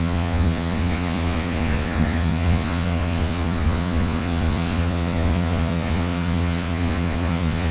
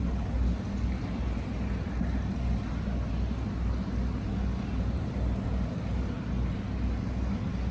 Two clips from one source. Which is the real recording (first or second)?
second